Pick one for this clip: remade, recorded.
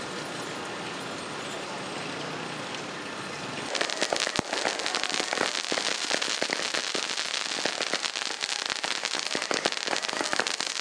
recorded